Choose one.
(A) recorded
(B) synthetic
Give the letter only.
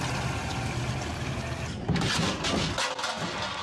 A